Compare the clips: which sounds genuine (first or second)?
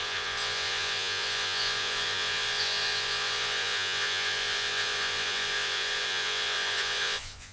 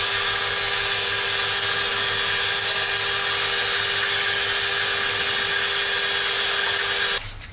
second